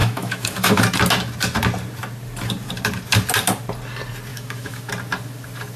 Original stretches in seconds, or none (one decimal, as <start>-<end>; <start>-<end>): 0.8-4.3; 4.9-5.8